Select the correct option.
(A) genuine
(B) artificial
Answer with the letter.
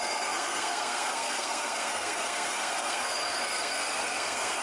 B